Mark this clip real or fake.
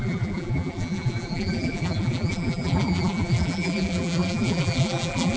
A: fake